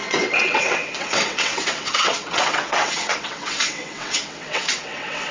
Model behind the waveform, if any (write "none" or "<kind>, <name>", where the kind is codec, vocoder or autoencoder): vocoder, WaveNeXt